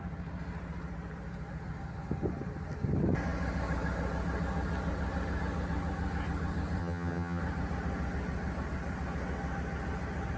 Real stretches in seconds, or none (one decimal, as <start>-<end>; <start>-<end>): 0.0-6.8; 7.4-10.4